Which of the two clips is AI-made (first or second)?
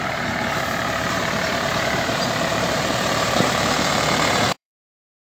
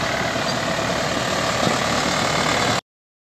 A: first